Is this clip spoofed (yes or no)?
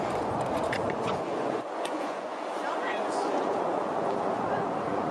yes